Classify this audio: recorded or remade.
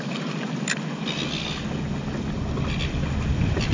recorded